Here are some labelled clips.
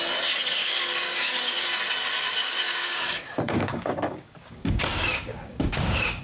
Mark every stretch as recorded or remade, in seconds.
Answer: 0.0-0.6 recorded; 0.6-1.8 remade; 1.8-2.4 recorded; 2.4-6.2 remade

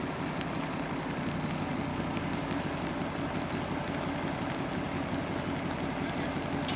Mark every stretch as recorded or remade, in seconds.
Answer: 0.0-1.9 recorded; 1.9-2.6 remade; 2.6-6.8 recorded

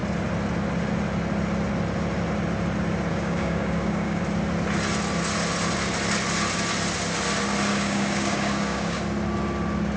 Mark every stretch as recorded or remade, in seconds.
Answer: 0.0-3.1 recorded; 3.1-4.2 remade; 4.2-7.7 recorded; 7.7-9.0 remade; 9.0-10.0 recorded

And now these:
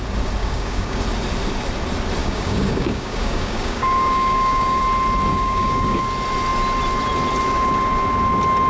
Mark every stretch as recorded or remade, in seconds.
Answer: 0.0-0.4 recorded; 0.4-1.0 remade; 1.0-2.2 recorded; 2.2-4.8 remade; 4.8-5.3 recorded; 5.3-6.0 remade; 6.0-8.7 recorded

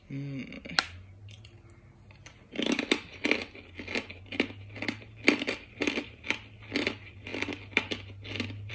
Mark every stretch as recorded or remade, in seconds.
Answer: 0.0-8.7 recorded